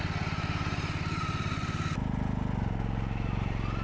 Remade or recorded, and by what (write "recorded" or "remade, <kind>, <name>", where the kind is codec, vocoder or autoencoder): recorded